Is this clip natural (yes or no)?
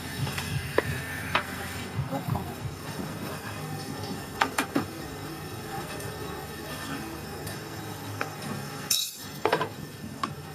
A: no